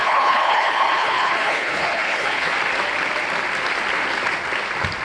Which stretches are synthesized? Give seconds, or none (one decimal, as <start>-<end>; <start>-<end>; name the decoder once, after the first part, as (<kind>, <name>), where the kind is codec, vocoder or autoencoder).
0.0-2.5 (codec, HILCodec)